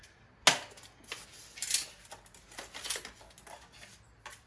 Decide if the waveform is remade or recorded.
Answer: recorded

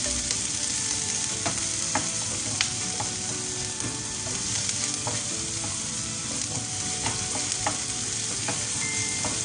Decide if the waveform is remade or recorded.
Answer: recorded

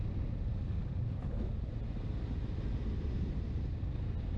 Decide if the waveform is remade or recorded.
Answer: recorded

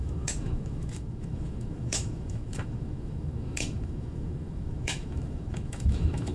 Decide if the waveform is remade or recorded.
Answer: remade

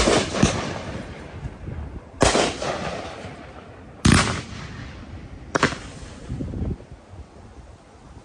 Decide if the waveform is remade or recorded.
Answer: recorded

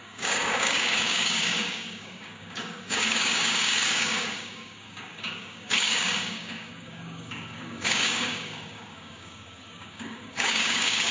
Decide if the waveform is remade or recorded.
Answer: remade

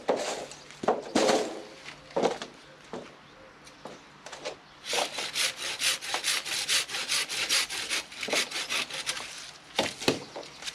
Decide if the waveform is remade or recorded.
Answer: recorded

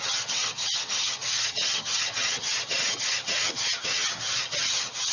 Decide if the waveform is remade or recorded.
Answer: remade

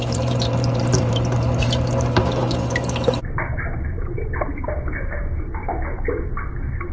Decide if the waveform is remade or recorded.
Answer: remade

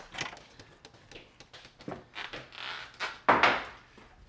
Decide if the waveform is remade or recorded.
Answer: recorded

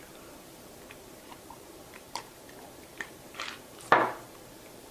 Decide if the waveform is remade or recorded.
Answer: remade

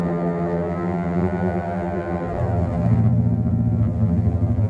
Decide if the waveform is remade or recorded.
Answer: remade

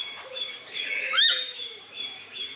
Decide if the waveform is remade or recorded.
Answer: remade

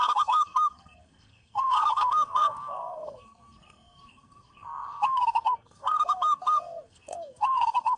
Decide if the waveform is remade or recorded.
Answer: remade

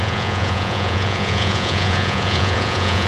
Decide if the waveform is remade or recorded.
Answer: remade